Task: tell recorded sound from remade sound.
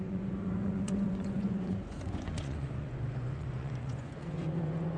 remade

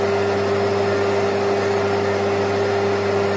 recorded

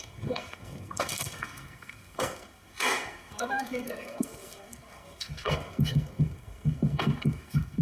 remade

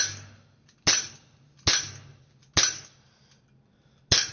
recorded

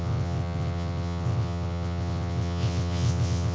remade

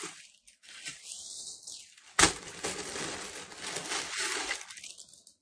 recorded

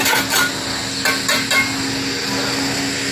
recorded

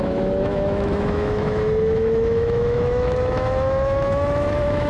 remade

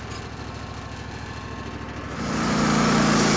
recorded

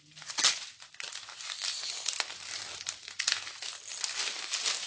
recorded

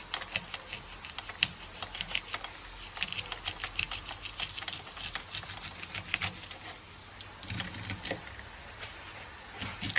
recorded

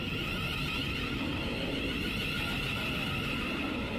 recorded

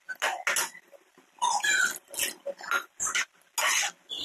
recorded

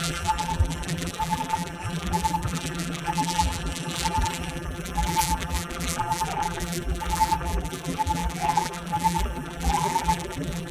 remade